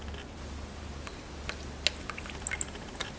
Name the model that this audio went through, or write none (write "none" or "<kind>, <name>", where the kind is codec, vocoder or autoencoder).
none